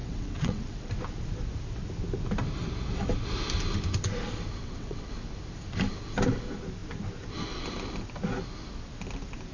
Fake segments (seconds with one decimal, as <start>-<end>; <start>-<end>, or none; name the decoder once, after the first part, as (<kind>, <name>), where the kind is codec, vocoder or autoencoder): 0.0-0.9 (vocoder, WaveNeXt); 4.6-5.1